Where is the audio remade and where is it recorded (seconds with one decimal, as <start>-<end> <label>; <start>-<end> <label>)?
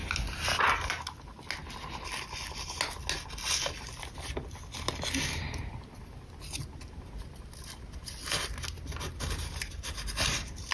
0.0-10.7 recorded